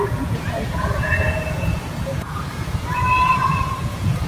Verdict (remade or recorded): remade